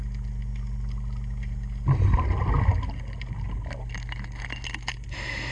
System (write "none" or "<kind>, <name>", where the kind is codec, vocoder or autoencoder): none